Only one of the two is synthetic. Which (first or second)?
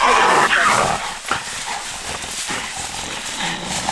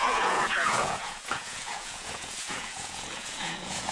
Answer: second